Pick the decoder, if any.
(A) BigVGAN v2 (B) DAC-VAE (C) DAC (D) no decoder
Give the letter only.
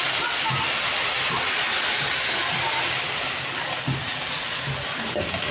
D